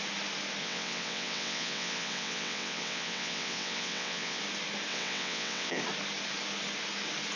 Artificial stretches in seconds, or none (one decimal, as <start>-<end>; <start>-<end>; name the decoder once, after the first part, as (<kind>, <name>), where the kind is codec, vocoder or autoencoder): 0.6-4.4 (vocoder, WaveNeXt); 4.9-5.8